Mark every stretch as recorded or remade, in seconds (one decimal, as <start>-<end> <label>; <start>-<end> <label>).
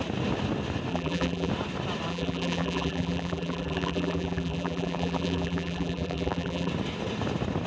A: 0.0-0.9 recorded; 0.9-1.5 remade; 1.5-2.1 recorded; 2.1-6.7 remade; 6.7-7.7 recorded